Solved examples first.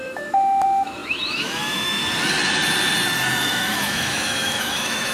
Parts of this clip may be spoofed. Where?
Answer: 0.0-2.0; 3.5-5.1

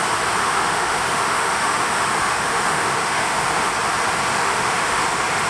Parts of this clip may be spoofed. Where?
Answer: 0.4-3.7; 4.3-5.0